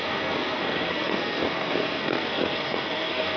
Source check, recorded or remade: remade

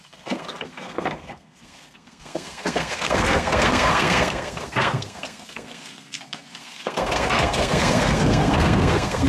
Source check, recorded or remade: remade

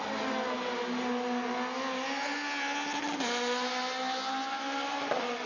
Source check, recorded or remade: recorded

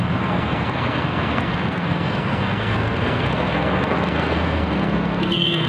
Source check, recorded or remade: remade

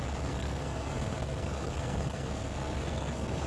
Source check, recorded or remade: remade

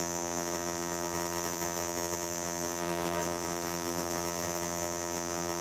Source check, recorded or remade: remade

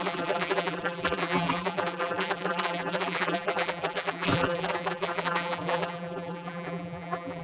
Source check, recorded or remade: remade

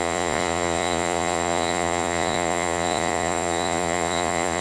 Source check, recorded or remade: remade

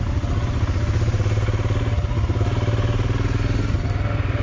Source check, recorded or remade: recorded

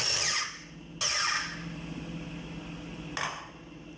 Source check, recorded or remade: recorded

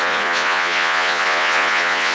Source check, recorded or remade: remade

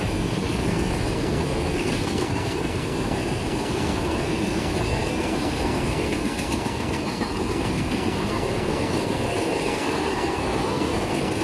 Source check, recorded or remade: remade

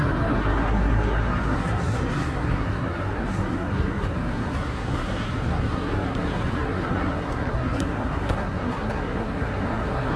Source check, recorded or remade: remade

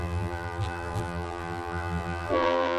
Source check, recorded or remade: remade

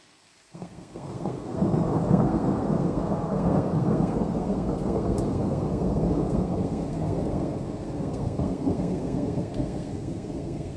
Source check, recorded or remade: remade